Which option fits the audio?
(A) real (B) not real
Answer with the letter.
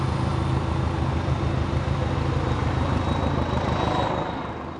A